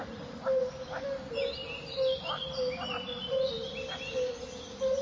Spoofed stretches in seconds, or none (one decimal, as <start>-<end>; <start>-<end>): none